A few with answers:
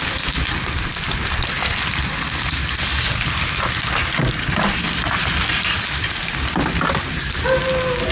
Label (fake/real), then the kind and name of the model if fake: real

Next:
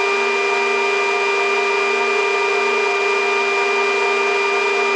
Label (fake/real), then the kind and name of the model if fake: real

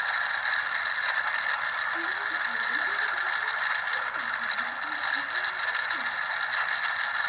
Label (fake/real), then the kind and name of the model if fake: real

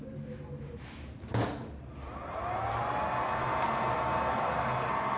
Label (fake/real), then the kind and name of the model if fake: real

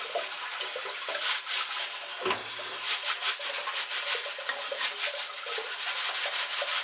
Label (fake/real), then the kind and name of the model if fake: real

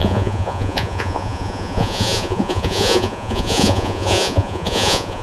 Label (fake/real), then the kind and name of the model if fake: fake, vocoder, Vocos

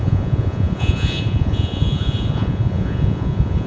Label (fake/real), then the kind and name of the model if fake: fake, vocoder, Vocos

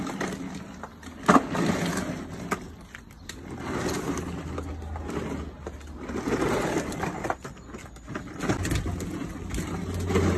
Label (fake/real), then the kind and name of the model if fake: real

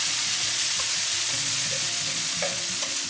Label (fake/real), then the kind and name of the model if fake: fake, vocoder, Vocos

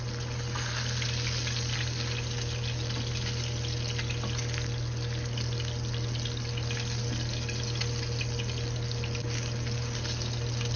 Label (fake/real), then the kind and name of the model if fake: real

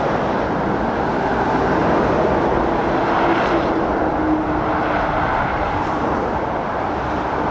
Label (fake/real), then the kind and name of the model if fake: real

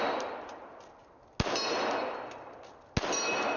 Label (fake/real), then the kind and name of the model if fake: real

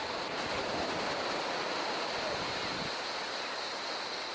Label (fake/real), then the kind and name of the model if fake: real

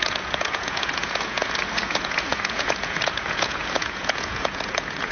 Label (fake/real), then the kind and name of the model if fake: fake, vocoder, Vocos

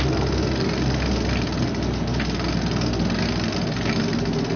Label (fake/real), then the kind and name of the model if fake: real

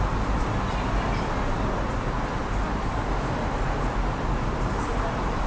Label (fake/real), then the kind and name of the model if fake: real